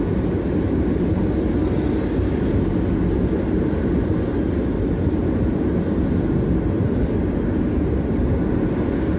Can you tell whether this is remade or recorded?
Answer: recorded